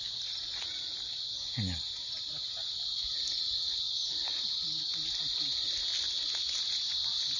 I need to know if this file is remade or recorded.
recorded